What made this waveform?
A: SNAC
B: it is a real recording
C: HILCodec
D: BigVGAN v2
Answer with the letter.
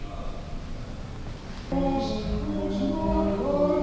B